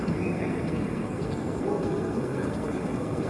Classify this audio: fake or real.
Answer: fake